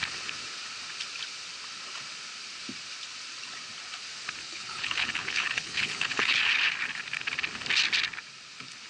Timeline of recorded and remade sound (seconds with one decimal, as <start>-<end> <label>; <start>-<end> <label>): 0.0-4.4 recorded; 4.4-6.4 remade; 6.4-8.9 recorded